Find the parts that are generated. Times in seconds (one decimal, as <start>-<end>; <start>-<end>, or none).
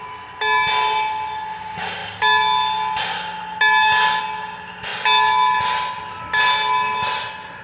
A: none